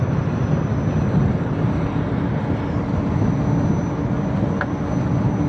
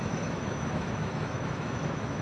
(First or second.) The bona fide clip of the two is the first